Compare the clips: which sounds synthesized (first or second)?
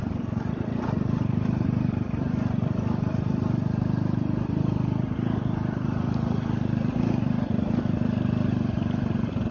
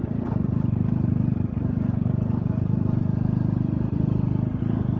first